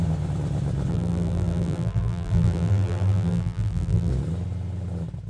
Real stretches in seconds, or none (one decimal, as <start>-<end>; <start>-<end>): 0.0-0.9; 4.1-5.3